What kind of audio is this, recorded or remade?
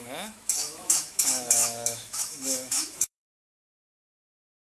remade